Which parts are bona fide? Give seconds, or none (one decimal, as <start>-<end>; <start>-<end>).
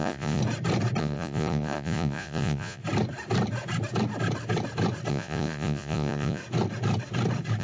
0.4-1.0; 2.8-5.1; 6.4-7.6